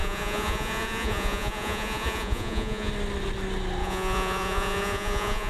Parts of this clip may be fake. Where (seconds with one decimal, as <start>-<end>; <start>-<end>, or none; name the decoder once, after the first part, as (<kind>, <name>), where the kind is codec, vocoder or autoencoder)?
0.0-2.9 (vocoder, Vocos); 3.8-5.5

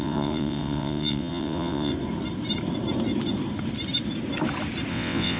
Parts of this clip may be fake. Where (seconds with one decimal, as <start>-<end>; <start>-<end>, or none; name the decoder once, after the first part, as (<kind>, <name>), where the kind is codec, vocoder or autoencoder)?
0.0-1.9 (vocoder, WaveNeXt); 4.9-5.4

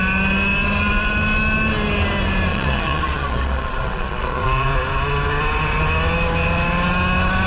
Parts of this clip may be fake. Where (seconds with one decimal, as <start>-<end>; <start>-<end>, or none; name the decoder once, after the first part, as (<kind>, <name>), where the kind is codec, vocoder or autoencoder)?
2.5-4.7 (vocoder, Vocos)

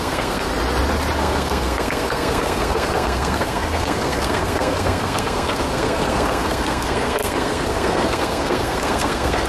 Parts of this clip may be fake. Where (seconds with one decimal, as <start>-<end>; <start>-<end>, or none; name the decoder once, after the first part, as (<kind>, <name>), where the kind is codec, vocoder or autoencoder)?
0.0-0.5 (codec, SNAC); 1.2-9.5

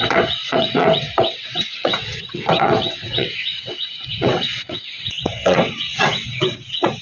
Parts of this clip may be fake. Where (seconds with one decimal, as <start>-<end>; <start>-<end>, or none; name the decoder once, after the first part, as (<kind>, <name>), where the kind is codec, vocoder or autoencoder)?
0.0-7.0 (vocoder, WaveNeXt)

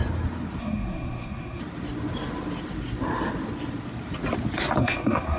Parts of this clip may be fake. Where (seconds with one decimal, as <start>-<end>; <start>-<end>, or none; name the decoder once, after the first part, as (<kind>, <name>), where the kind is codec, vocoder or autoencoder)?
0.6-1.6 (codec, SNAC); 4.8-5.4